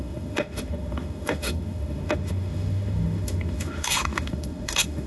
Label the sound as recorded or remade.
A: remade